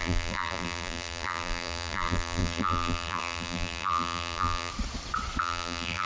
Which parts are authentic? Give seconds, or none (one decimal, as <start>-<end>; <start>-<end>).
4.7-5.4